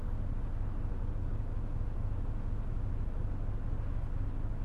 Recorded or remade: recorded